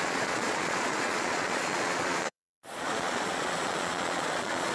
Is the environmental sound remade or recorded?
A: remade